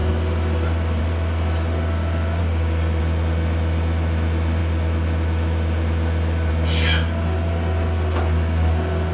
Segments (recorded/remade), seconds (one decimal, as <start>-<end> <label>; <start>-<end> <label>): 0.0-2.4 recorded; 2.4-3.0 remade; 3.0-9.1 recorded